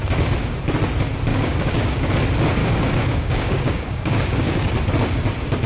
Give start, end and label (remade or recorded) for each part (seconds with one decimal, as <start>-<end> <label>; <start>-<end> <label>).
0.0-1.3 recorded; 1.3-2.1 remade; 2.1-2.6 recorded; 2.6-4.7 remade; 4.7-5.7 recorded